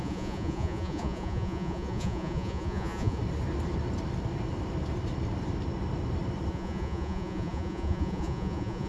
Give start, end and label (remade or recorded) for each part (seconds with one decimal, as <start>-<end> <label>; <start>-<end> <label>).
0.0-3.2 remade; 3.2-6.5 recorded; 6.5-8.9 remade